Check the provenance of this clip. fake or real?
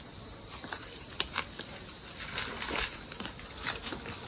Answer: real